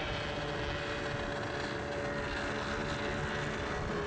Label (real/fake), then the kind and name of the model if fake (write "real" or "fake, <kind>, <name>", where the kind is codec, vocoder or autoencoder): real